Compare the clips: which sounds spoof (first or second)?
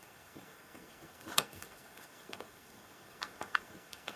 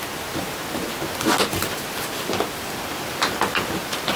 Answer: first